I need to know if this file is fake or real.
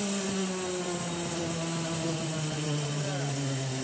real